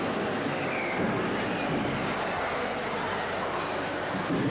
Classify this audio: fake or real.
real